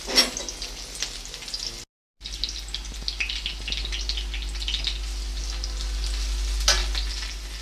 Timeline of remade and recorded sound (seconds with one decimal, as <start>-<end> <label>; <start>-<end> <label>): 0.0-7.6 recorded